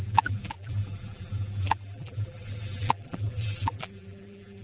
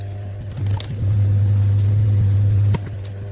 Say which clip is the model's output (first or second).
first